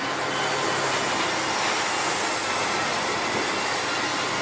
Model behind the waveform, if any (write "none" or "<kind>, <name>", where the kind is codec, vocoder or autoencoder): none